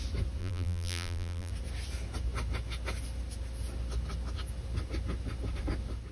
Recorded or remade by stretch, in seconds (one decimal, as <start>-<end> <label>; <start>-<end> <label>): 0.0-0.4 recorded; 0.4-1.5 remade; 1.5-6.1 recorded